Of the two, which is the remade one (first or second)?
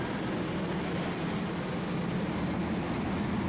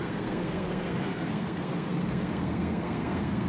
second